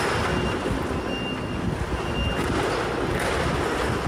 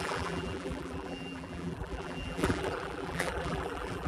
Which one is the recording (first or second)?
first